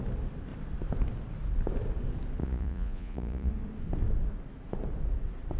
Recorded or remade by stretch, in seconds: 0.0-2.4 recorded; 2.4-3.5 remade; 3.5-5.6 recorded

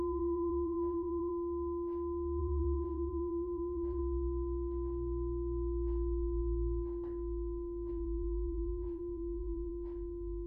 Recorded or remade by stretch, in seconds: 0.0-1.3 remade; 1.3-2.4 recorded; 2.4-4.0 remade; 4.0-7.9 recorded; 7.9-9.7 remade; 9.7-10.5 recorded

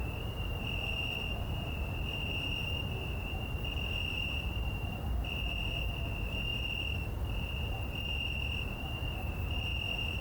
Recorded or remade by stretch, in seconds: 0.0-6.5 remade; 6.5-8.8 recorded; 8.8-10.2 remade

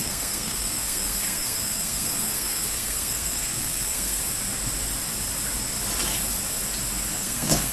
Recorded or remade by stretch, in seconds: 0.0-4.2 remade; 4.2-7.1 recorded; 7.1-7.7 remade

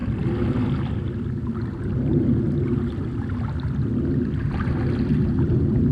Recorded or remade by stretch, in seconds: 0.0-5.9 recorded